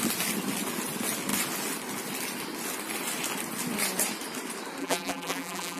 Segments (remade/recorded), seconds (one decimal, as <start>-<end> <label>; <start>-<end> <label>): 0.0-4.8 recorded; 4.8-5.8 remade